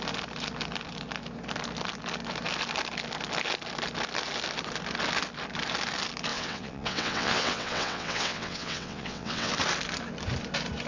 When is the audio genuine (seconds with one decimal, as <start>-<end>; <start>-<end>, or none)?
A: 0.0-6.3; 9.5-10.9